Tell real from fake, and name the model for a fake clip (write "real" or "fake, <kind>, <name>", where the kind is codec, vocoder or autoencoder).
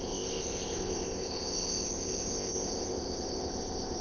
fake, codec, ZipCodec